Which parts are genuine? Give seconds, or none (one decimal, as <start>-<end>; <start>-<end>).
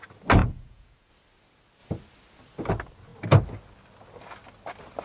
0.0-0.4; 1.1-5.0